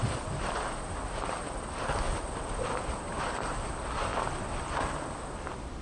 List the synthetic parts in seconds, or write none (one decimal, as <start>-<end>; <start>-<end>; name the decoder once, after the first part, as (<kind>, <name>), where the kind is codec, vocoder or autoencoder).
none